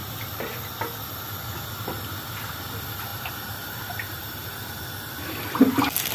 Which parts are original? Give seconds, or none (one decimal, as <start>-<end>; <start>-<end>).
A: 0.0-3.1; 4.7-6.1